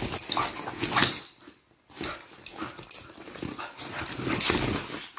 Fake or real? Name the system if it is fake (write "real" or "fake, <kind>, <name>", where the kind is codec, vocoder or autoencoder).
real